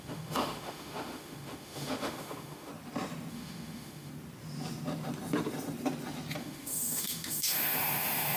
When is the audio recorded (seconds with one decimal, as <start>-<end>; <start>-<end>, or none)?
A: 2.7-3.3; 4.1-6.4